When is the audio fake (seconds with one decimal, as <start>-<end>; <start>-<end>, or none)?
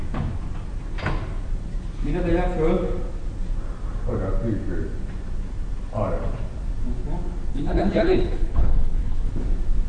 7.5-9.3